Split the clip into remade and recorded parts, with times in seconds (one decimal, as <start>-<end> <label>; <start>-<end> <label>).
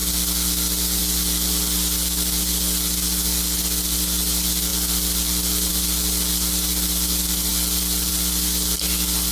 0.0-9.3 recorded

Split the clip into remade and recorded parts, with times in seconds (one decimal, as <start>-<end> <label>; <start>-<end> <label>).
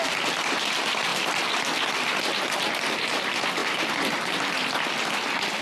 0.0-3.6 recorded; 3.6-4.4 remade; 4.4-5.6 recorded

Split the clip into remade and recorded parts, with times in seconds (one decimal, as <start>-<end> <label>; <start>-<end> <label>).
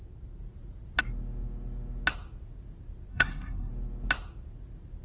0.0-3.1 recorded; 3.1-3.7 remade; 3.7-5.0 recorded